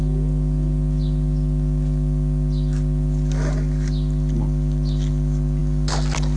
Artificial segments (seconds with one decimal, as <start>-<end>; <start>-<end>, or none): none